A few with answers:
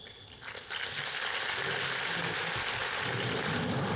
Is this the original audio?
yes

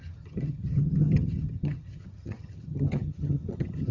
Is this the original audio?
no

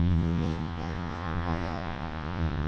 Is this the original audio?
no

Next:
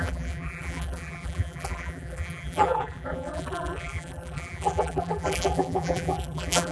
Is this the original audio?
no